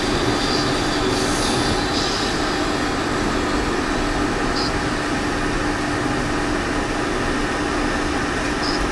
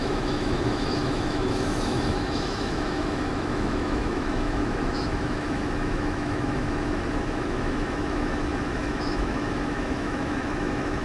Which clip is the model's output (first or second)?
second